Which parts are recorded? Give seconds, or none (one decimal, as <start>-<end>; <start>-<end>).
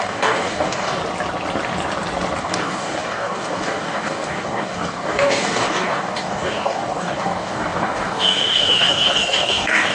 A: 1.0-2.4